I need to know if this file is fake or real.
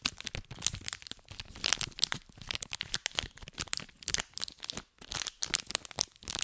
real